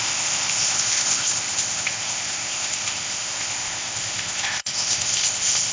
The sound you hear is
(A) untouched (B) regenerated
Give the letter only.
B